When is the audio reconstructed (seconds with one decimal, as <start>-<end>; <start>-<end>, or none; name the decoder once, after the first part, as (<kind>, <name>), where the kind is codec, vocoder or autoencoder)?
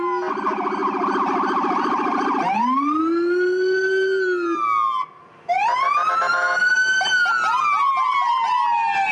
none